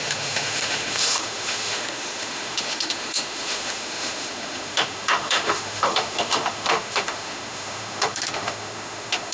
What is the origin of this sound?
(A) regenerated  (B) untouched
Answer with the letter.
A